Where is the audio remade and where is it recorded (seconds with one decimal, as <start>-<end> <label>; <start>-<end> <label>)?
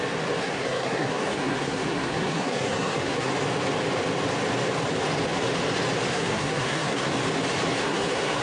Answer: 0.0-0.4 recorded; 0.4-3.3 remade; 3.3-6.1 recorded; 6.1-7.1 remade; 7.1-7.8 recorded; 7.8-8.4 remade